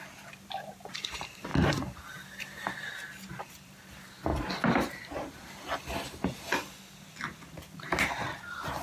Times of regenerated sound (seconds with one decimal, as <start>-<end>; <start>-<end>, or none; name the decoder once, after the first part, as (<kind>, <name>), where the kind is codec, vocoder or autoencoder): 0.0-1.5 (vocoder, BigVGAN v2); 3.4-4.3; 7.4-8.8